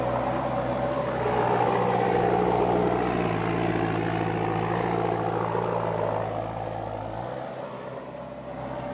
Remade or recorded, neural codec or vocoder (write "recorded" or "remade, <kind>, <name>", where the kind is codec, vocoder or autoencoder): recorded